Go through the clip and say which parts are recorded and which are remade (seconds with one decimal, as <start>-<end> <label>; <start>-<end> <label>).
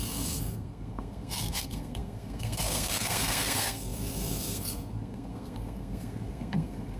0.0-7.0 remade